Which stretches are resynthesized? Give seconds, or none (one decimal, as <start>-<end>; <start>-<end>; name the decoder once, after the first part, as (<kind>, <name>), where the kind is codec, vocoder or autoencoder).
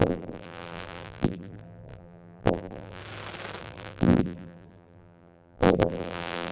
0.0-3.0 (vocoder, BigVGAN v2); 3.6-6.5